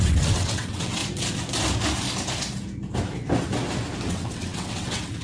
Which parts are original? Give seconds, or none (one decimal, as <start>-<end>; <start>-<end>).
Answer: 1.0-4.1